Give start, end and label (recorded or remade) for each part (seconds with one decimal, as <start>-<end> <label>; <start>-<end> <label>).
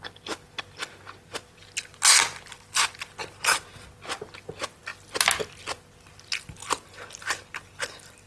0.0-8.3 recorded